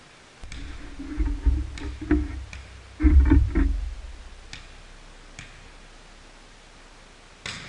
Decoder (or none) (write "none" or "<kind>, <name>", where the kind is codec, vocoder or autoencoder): none